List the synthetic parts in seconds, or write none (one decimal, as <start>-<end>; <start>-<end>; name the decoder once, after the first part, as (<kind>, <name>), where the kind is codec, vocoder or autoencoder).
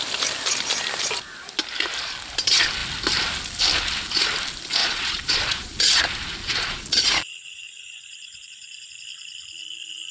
4.8-6.0 (vocoder, Vocos); 6.4-8.9